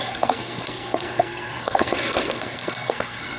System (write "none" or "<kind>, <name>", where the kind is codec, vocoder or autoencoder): codec, SNAC